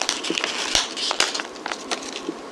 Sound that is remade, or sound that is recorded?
recorded